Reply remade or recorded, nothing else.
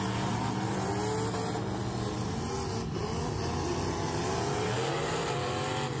recorded